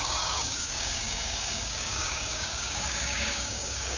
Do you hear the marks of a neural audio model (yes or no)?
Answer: yes